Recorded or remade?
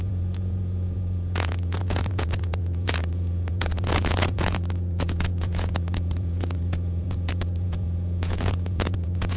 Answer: remade